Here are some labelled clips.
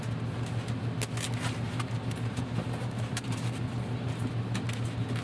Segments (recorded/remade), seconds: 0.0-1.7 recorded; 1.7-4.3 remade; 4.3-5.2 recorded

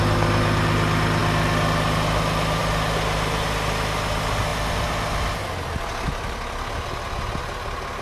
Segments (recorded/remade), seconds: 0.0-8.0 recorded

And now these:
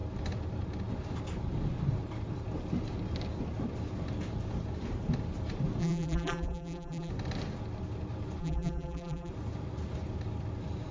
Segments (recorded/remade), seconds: 0.0-5.8 recorded; 5.8-7.1 remade; 7.1-8.4 recorded; 8.4-9.3 remade; 9.3-10.9 recorded

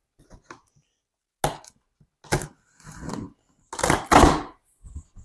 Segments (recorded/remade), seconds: 0.0-5.2 recorded

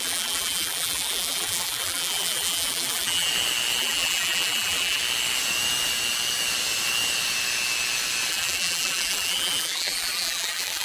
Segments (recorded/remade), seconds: 0.0-3.3 remade; 3.3-3.8 recorded; 3.8-5.0 remade; 5.0-8.3 recorded; 8.3-10.8 remade

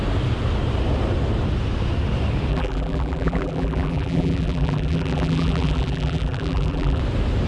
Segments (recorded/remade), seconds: 0.0-2.5 recorded; 2.5-7.0 remade; 7.0-7.5 recorded

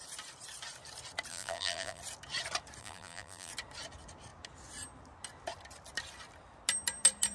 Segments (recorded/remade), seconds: 0.0-1.3 recorded; 1.3-2.0 remade; 2.0-2.8 recorded; 2.8-3.5 remade; 3.5-7.3 recorded